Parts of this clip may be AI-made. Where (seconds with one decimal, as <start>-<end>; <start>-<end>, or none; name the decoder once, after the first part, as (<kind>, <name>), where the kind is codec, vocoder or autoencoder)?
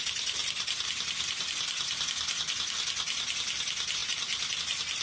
none